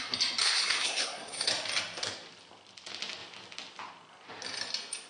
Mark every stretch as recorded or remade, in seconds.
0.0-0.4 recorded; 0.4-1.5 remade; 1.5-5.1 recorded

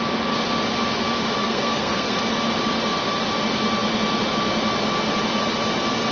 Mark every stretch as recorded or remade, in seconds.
0.0-1.4 recorded; 1.4-2.2 remade; 2.2-6.1 recorded

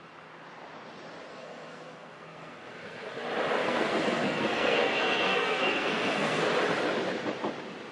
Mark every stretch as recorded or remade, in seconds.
0.0-1.3 recorded; 1.3-3.2 remade; 3.2-3.6 recorded; 3.6-6.4 remade; 6.4-7.9 recorded

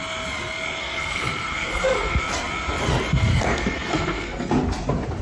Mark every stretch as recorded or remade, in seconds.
0.0-0.8 recorded; 0.8-2.2 remade; 2.2-3.3 recorded; 3.3-4.5 remade; 4.5-5.2 recorded

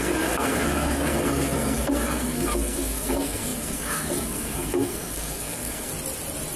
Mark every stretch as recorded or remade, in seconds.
0.0-5.9 remade; 5.9-6.6 recorded